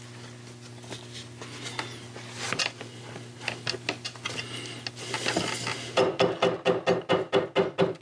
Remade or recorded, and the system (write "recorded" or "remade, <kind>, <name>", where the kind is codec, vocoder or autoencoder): recorded